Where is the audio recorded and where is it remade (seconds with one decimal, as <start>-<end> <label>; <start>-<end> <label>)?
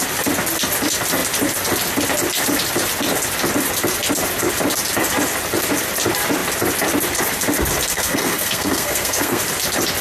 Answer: 0.0-7.9 recorded; 7.9-9.4 remade; 9.4-10.0 recorded